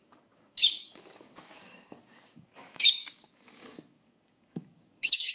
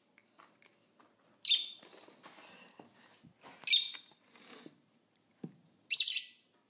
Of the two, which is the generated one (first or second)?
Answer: first